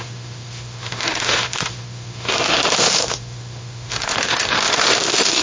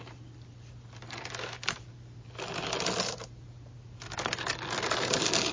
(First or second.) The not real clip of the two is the first